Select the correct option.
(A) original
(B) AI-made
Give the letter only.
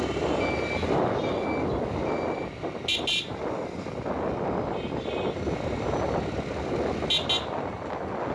A